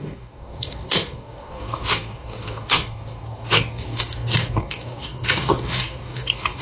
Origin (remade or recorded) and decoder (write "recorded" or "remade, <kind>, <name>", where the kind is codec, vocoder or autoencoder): remade, codec, DAC